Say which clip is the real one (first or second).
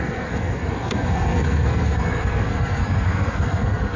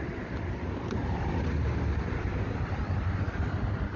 second